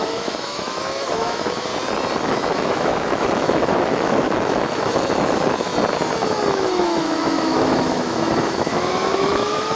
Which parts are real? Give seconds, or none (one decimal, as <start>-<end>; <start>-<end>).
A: 1.7-2.5; 5.7-6.5